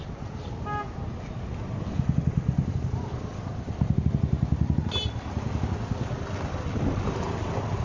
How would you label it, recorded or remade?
recorded